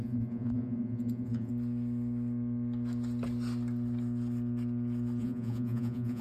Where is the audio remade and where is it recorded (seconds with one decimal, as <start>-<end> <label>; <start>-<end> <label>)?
0.0-1.5 remade; 1.5-5.2 recorded; 5.2-6.2 remade